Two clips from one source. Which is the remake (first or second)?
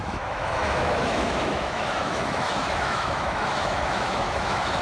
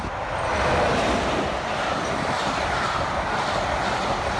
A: first